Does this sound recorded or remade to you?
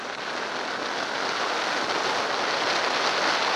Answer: recorded